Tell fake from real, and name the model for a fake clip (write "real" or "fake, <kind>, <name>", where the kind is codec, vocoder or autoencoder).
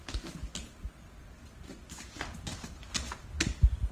real